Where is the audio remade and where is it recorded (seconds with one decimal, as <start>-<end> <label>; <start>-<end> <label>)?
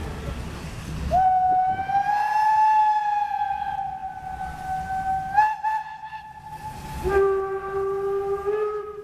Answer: 0.0-9.0 recorded